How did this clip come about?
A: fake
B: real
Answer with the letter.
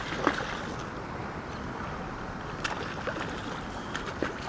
B